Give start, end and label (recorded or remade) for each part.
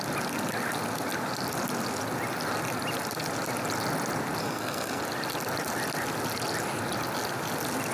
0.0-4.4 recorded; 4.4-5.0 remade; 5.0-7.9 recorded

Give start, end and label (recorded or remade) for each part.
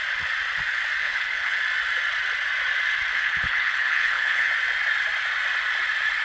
0.0-1.0 recorded; 1.0-1.6 remade; 1.6-3.1 recorded; 3.1-4.5 remade; 4.5-6.2 recorded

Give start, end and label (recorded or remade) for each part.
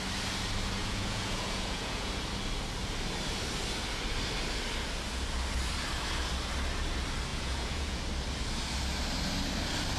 0.0-0.8 recorded; 0.8-2.1 remade; 2.1-7.3 recorded; 7.3-8.0 remade; 8.0-10.0 recorded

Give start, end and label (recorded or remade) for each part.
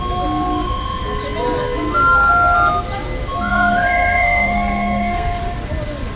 0.0-3.5 recorded; 3.5-5.4 remade; 5.4-6.2 recorded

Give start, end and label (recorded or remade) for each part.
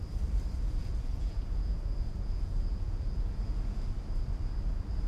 0.0-0.8 recorded; 0.8-3.9 remade; 3.9-5.1 recorded